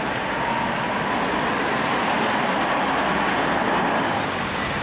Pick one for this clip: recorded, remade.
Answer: recorded